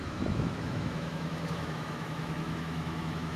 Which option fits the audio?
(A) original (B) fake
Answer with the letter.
B